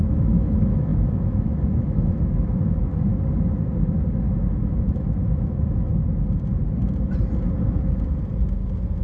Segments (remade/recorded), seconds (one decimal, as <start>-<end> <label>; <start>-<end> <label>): 0.0-3.1 remade; 3.1-4.6 recorded; 4.6-5.9 remade; 5.9-9.0 recorded